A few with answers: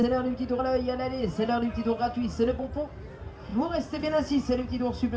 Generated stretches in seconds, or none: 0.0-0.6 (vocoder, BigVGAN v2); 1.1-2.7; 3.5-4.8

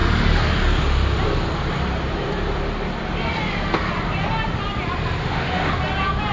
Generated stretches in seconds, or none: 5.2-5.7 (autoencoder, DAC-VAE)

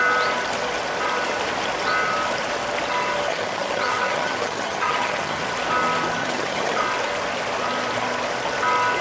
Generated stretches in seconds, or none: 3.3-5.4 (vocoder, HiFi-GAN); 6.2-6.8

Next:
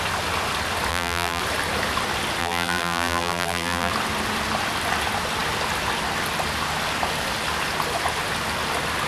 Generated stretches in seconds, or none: 0.9-1.4 (vocoder, BigVGAN v2); 2.4-3.9

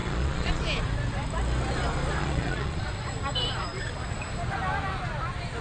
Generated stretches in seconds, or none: 0.0-0.6 (vocoder, Vocos); 2.2-2.8

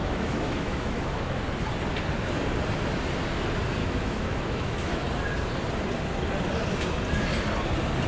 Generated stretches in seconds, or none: 0.0-1.4 (autoencoder, DAC-VAE); 3.8-5.1

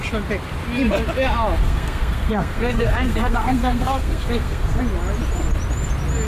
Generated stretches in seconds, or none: 1.6-4.8 (codec, SNAC)